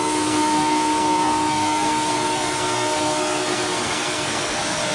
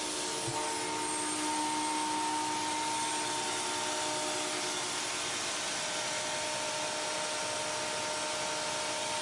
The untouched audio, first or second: second